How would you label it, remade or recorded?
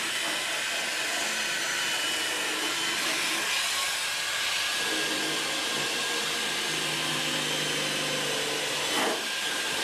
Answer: recorded